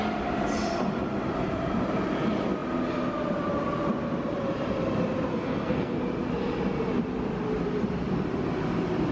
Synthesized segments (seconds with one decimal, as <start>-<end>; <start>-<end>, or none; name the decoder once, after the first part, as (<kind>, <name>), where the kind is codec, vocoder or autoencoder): 5.3-6.0 (codec, SNAC)